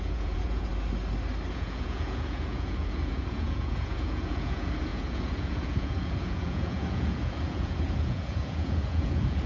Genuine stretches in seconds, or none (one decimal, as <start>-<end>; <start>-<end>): 0.7-1.5